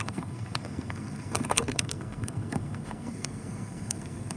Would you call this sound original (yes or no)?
no